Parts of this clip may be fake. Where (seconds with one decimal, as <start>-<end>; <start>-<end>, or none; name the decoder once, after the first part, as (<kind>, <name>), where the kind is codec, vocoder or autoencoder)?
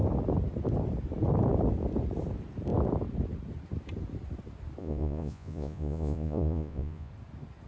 4.8-7.1 (vocoder, Vocos)